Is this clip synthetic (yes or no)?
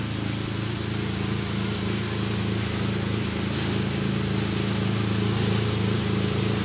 no